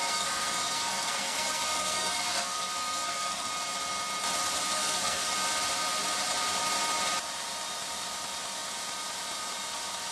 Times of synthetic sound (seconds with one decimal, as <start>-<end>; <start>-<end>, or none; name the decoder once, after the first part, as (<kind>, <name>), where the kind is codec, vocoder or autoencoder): 0.0-3.5 (codec, SNAC); 4.8-5.3